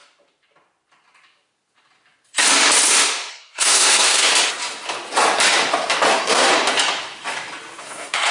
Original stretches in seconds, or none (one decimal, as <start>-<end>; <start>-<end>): 0.0-3.3; 4.3-6.1; 6.5-7.8